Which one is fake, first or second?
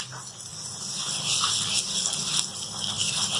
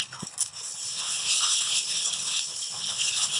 second